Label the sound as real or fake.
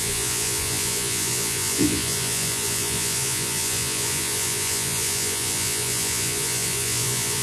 fake